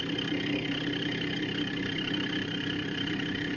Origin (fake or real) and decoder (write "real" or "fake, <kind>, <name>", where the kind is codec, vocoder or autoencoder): fake, vocoder, BigVGAN v2